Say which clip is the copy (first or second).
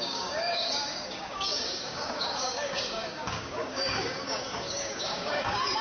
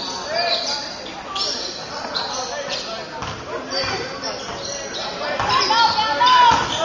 first